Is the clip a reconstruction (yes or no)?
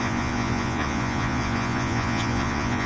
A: yes